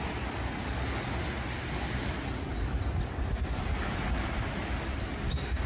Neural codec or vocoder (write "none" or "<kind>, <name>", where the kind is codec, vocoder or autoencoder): none